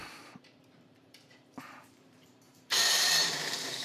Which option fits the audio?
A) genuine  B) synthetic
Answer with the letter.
B